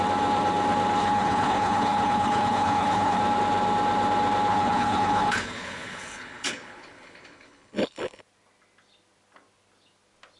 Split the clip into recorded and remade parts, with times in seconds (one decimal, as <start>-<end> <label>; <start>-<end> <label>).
0.0-1.0 recorded; 1.0-3.2 remade; 3.2-4.5 recorded; 4.5-8.2 remade; 8.2-10.4 recorded